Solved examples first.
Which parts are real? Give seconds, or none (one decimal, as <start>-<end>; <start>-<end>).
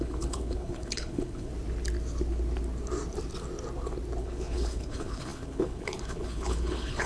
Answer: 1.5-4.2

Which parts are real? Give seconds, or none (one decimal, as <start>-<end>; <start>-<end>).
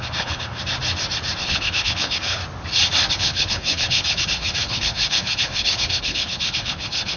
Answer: 0.6-1.4; 2.4-3.1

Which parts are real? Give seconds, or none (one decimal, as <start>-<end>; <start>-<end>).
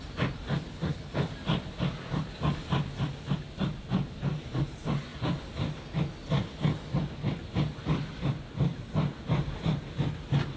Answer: 0.0-0.7; 1.3-10.6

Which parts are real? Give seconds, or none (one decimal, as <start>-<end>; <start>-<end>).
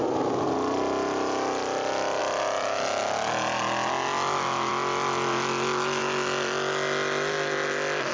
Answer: 0.0-8.1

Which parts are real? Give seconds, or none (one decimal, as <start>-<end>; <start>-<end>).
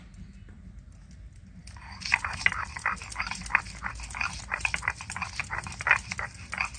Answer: 0.0-6.8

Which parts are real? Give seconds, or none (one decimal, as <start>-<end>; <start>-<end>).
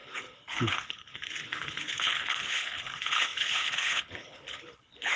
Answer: none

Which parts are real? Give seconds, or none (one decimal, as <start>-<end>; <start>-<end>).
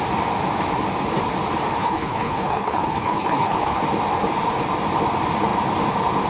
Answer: 0.0-1.8; 3.8-6.3